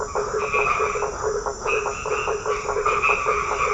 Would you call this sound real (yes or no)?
yes